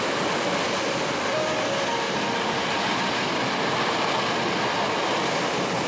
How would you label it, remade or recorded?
recorded